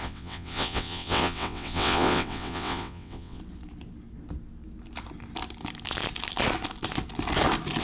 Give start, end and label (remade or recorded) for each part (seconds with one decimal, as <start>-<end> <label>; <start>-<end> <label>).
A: 0.0-3.4 remade; 3.4-7.8 recorded